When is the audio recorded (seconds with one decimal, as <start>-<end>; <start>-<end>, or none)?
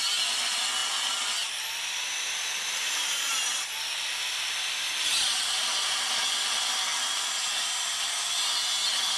0.0-9.2